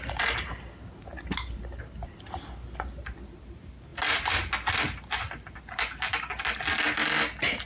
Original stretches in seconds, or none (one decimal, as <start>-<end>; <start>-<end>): 0.0-7.7